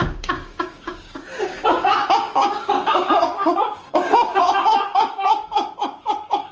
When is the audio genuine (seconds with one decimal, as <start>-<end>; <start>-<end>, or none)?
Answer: none